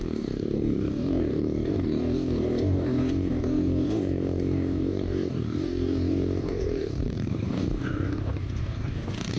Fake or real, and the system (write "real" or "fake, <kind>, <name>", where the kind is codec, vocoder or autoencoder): fake, codec, DAC